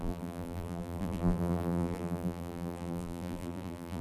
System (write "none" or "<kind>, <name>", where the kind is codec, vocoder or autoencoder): vocoder, BigVGAN v2